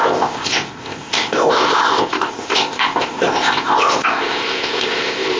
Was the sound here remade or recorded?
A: remade